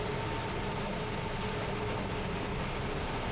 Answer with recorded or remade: recorded